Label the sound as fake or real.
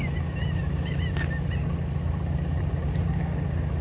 real